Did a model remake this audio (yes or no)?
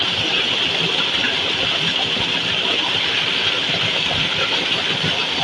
no